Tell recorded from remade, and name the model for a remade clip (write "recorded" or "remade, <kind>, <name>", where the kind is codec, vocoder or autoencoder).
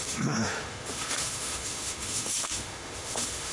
remade, autoencoder, DAC-VAE